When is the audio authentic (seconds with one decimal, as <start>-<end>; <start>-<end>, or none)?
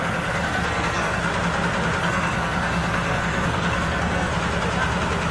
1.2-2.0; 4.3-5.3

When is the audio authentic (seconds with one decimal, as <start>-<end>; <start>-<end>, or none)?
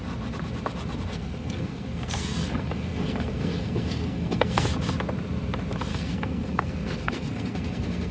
0.0-1.1; 4.7-5.9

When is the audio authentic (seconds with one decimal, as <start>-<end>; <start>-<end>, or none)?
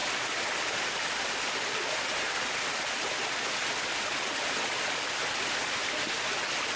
0.0-6.8